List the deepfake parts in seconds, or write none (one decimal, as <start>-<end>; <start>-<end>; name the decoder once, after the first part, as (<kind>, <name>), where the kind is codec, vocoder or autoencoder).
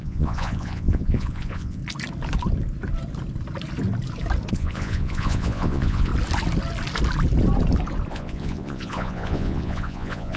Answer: 0.0-1.8 (vocoder, Vocos); 4.5-6.1; 8.1-10.4